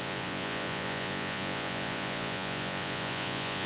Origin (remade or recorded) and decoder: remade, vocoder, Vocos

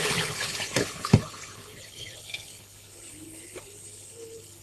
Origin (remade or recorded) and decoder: remade, codec, HILCodec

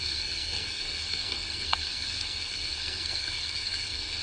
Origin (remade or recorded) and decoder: remade, codec, SNAC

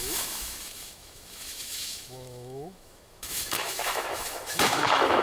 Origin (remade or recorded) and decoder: remade, autoencoder, DAC-VAE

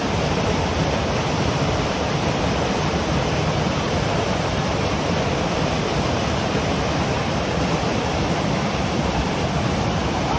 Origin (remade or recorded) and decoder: remade, vocoder, BigVGAN v2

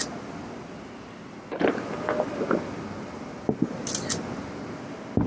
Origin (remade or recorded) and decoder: recorded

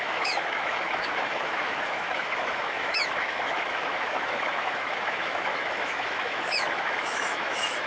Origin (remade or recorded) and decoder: remade, autoencoder, DAC-VAE